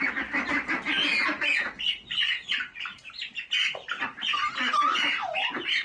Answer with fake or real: real